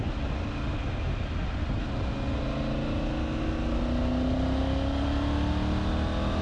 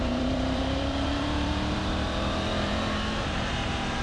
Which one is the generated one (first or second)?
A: second